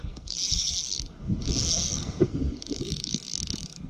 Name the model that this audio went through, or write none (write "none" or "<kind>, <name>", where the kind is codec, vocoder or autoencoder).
codec, SNAC